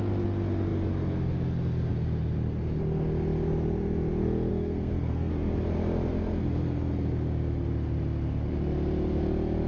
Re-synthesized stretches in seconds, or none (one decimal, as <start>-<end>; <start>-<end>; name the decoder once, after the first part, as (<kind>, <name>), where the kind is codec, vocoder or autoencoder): 4.5-5.3 (codec, SNAC)